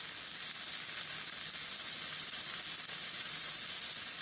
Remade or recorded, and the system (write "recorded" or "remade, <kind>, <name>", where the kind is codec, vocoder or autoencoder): recorded